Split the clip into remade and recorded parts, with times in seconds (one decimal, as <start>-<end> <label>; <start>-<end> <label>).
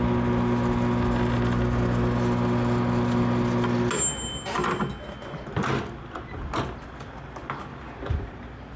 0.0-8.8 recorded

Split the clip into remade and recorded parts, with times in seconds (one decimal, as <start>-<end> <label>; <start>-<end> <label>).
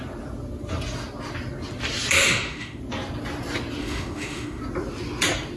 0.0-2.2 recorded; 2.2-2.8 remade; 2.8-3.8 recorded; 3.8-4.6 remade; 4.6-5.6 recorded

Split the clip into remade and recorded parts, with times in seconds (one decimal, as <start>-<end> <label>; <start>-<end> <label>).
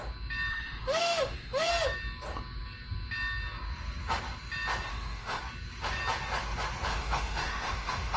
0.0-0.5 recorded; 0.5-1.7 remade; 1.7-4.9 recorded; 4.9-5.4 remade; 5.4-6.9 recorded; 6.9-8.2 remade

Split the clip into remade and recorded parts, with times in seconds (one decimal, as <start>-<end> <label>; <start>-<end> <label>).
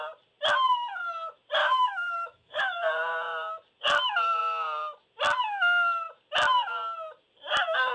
0.0-1.6 recorded; 1.6-2.6 remade; 2.6-7.9 recorded